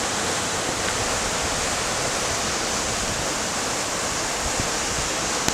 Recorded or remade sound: recorded